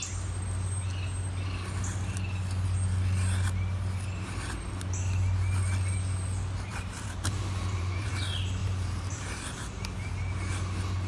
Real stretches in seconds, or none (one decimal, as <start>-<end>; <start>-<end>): 0.0-6.7; 8.1-8.6; 10.1-11.1